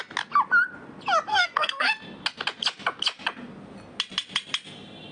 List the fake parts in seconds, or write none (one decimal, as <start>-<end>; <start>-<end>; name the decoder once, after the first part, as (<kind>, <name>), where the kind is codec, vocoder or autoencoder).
1.3-1.9 (codec, SNAC)